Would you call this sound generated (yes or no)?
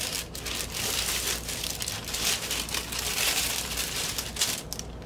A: no